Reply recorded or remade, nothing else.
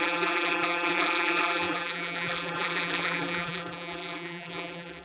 remade